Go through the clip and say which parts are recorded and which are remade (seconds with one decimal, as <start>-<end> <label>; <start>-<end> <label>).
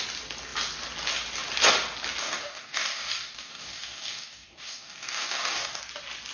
0.0-2.2 recorded; 2.2-5.8 remade; 5.8-6.3 recorded